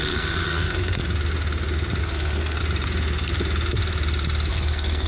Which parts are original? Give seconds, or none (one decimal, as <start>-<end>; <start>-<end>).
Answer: 1.0-2.0; 2.6-4.5